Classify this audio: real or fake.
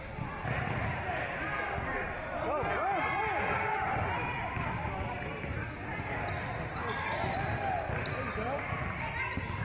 fake